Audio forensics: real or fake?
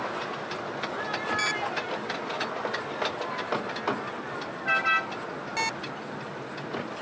real